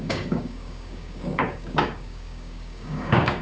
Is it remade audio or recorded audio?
remade